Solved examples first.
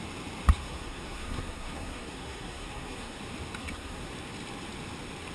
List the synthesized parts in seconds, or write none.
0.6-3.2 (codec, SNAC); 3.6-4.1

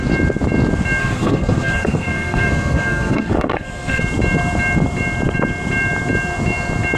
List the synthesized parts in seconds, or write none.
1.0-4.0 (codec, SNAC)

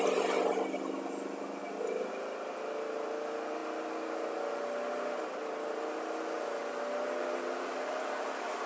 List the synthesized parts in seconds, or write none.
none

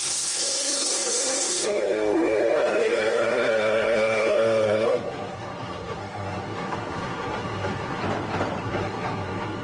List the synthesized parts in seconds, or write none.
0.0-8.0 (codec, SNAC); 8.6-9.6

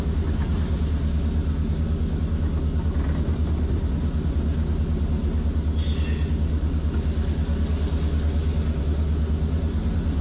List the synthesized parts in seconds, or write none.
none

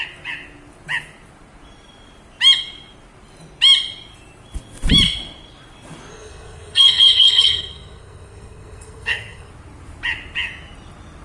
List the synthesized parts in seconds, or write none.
6.1-9.5 (codec, SNAC)

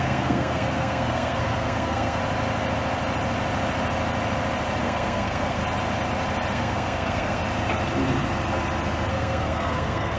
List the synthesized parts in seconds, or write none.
0.0-2.2 (codec, SNAC); 4.8-5.6; 6.5-7.4; 9.1-10.2